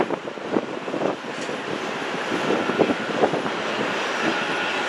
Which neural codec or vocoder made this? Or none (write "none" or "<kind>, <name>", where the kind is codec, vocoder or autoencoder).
none